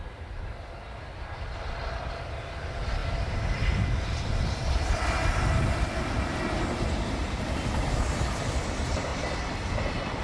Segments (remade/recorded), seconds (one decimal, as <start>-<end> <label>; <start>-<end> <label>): 0.0-9.1 remade; 9.1-10.2 recorded